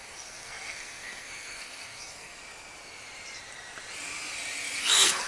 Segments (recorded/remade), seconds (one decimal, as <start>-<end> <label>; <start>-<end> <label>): 0.0-2.4 remade; 2.4-4.8 recorded; 4.8-5.3 remade